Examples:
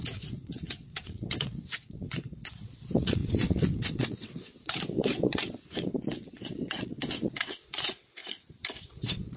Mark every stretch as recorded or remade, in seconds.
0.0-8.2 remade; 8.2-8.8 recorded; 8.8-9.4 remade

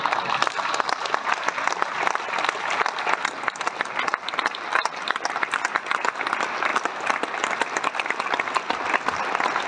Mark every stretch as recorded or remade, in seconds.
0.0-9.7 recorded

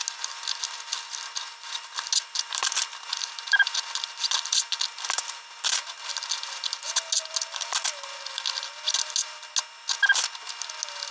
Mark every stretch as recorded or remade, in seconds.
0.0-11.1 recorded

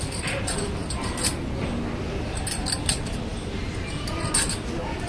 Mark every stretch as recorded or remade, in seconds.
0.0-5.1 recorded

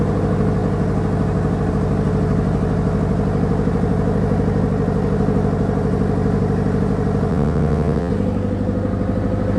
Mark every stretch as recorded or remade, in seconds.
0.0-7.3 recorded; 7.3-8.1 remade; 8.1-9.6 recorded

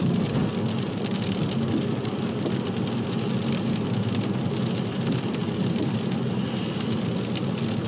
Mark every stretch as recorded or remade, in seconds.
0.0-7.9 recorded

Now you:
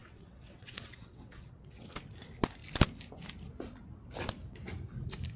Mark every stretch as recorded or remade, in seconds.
0.0-2.0 remade; 2.0-5.4 recorded

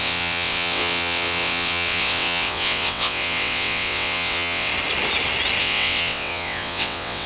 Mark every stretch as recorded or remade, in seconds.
0.0-4.7 remade; 4.7-5.6 recorded; 5.6-7.3 remade